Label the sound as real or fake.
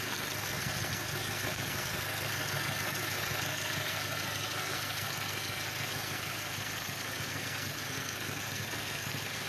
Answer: fake